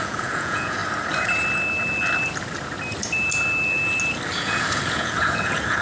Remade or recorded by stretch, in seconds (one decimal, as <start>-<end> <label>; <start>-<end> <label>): 0.0-0.8 remade; 0.8-4.3 recorded; 4.3-5.8 remade